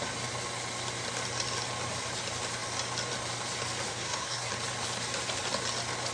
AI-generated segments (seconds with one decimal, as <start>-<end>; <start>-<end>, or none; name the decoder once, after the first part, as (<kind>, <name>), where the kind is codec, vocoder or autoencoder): 3.9-4.5 (codec, SNAC)